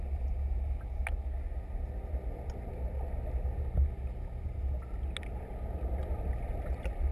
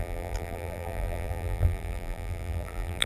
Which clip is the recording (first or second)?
first